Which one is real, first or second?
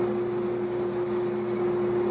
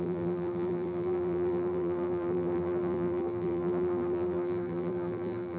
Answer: first